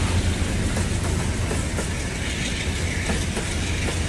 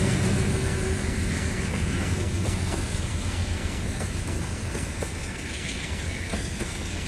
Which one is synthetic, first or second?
second